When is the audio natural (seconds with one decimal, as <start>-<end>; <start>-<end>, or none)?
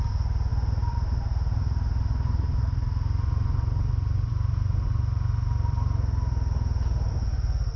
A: 0.0-7.8